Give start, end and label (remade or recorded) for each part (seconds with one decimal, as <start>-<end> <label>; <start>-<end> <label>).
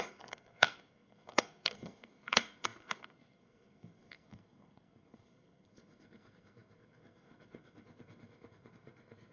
0.0-9.3 remade